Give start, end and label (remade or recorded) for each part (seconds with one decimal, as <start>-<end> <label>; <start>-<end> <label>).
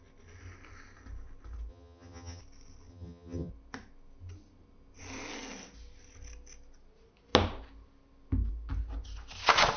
0.0-1.7 recorded; 1.7-2.4 remade; 2.4-2.9 recorded; 2.9-3.5 remade; 3.5-9.8 recorded